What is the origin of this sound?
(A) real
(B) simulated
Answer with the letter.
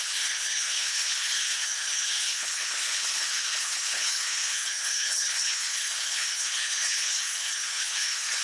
B